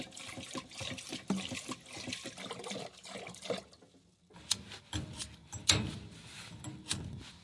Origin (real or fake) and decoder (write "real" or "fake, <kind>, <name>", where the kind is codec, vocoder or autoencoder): real